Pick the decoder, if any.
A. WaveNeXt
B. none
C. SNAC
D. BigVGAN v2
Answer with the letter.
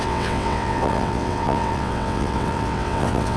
A